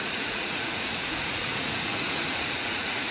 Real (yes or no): no